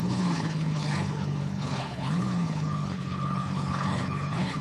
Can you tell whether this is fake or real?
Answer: fake